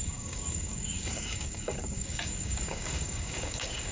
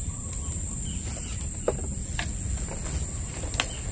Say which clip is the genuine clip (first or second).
second